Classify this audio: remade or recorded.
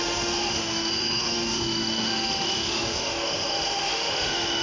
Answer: remade